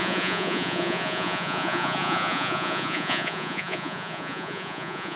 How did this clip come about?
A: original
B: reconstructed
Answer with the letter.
B